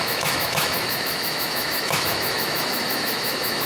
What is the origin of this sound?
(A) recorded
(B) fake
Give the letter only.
B